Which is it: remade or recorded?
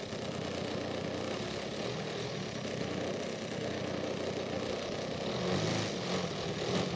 recorded